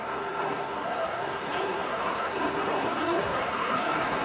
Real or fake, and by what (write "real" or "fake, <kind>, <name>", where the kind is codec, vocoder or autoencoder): fake, codec, SNAC